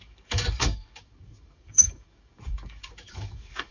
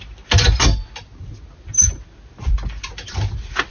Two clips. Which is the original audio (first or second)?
second